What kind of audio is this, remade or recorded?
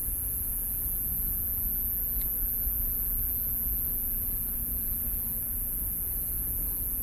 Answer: recorded